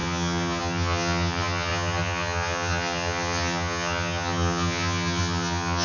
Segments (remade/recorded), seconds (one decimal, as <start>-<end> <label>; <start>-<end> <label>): 0.0-5.8 remade